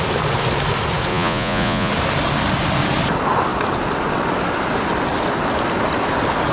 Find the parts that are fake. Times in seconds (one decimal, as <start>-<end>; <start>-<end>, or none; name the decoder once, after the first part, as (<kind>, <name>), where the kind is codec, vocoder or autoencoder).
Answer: 1.1-1.9 (vocoder, Vocos)